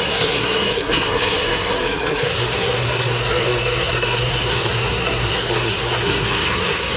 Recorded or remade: remade